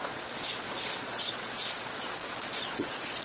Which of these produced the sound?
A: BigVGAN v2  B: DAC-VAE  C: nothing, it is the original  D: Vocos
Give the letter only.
D